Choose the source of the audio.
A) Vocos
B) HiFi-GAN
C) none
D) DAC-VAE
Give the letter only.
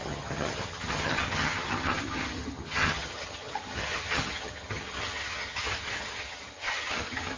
B